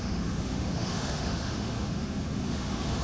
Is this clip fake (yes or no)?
yes